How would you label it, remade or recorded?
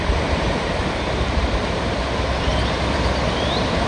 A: remade